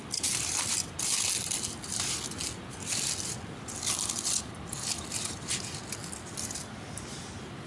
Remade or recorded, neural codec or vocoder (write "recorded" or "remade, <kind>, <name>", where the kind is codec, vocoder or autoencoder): recorded